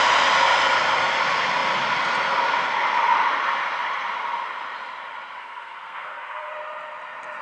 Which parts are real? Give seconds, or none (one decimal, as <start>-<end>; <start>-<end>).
0.0-5.4; 6.5-7.4

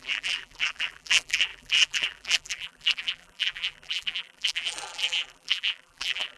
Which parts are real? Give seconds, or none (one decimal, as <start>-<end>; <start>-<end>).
none